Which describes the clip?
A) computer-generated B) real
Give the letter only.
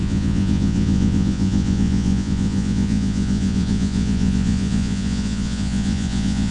A